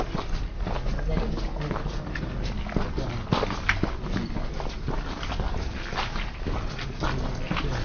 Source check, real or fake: real